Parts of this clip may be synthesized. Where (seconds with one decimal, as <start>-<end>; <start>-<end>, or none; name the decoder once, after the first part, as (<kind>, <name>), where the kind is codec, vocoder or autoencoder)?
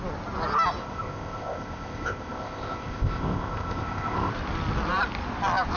0.8-4.3 (codec, ZipCodec)